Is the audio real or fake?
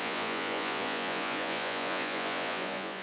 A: fake